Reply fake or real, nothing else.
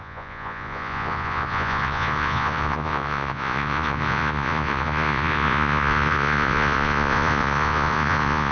fake